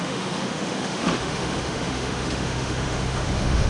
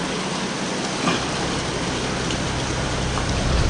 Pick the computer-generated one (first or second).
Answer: first